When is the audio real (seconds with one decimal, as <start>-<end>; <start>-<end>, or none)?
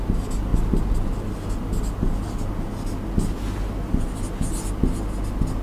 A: 0.0-5.6